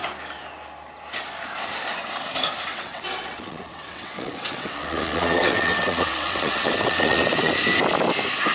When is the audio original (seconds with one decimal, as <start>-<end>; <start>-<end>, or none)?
0.0-2.7; 7.5-8.5